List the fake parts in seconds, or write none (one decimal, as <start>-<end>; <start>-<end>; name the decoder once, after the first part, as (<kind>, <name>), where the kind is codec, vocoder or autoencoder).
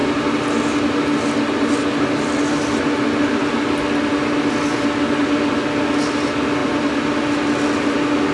none